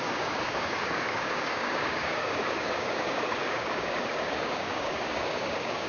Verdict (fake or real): fake